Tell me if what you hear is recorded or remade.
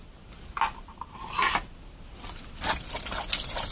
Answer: recorded